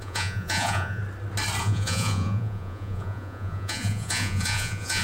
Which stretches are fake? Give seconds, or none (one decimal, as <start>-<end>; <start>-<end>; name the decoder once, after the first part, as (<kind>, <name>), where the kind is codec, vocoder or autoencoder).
0.0-1.0 (vocoder, Vocos); 1.6-5.0